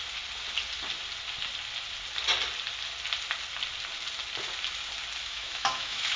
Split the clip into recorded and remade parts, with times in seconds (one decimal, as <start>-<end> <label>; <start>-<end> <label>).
0.0-5.2 recorded; 5.2-6.2 remade